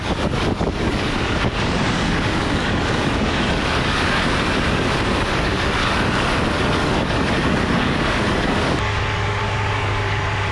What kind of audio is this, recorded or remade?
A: remade